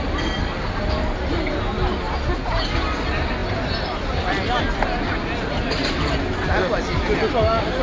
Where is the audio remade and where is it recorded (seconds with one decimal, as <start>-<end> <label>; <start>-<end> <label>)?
0.0-7.8 recorded